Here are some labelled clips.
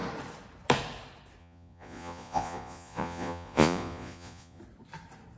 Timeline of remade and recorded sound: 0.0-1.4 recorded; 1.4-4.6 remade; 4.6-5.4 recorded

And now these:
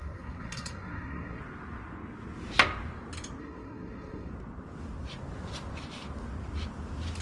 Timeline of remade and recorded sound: 0.0-1.4 remade; 1.4-3.4 recorded; 3.4-4.3 remade; 4.3-7.2 recorded

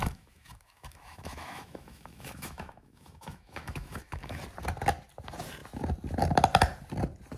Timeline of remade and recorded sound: 0.0-4.4 remade; 4.4-7.4 recorded

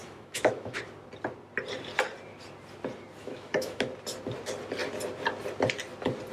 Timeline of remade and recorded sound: 0.0-0.8 remade; 0.8-3.2 recorded; 3.2-3.9 remade; 3.9-6.3 recorded

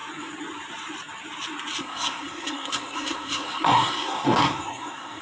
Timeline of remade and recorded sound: 0.0-1.8 recorded; 1.8-5.2 remade

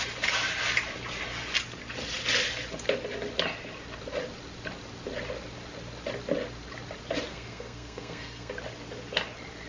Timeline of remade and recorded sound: 0.0-7.3 recorded; 7.3-8.5 remade; 8.5-9.7 recorded

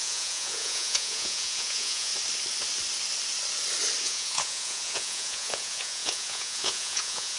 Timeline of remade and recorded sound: 0.0-2.1 remade; 2.1-4.0 recorded; 4.0-7.4 remade

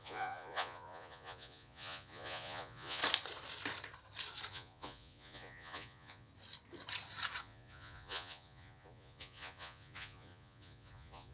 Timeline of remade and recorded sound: 0.0-3.0 remade; 3.0-4.5 recorded; 4.5-6.3 remade; 6.3-7.4 recorded; 7.4-11.3 remade